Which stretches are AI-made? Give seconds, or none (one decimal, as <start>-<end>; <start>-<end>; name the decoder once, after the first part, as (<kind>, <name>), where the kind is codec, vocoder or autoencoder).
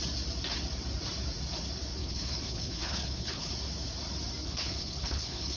2.0-3.5 (codec, HILCodec); 4.4-5.6